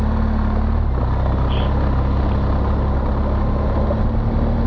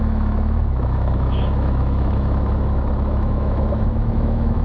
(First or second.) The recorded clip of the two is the first